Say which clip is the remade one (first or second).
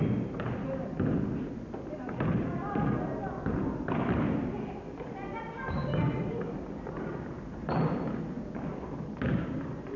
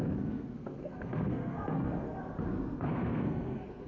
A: second